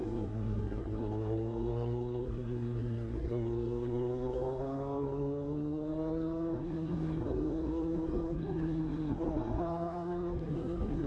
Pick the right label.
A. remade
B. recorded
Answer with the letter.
A